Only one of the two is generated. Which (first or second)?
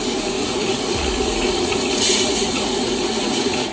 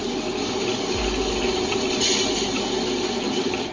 first